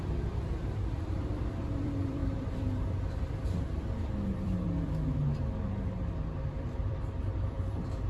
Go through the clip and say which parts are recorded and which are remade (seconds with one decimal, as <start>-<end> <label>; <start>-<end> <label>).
0.0-5.4 remade; 5.4-6.5 recorded; 6.5-8.1 remade